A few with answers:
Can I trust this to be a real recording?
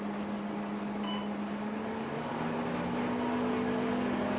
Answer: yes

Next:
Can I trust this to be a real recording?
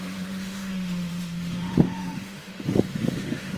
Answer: no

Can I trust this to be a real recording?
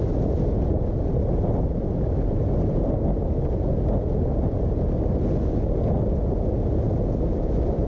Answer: yes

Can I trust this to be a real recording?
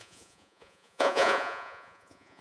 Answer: no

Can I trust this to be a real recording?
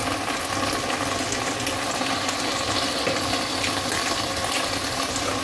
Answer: yes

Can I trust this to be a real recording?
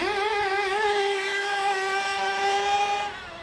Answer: yes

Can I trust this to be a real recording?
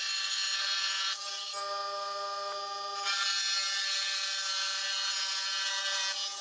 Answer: yes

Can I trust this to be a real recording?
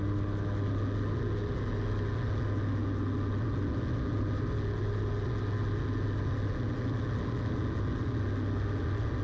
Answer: yes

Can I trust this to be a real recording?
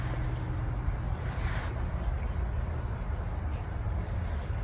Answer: yes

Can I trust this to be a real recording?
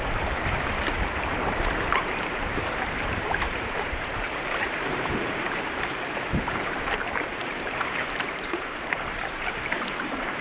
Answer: no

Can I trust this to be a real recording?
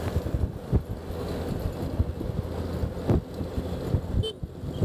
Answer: yes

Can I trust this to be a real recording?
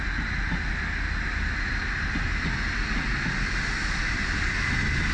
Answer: yes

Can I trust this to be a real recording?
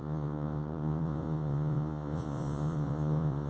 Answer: no